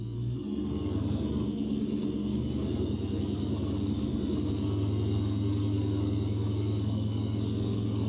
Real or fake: fake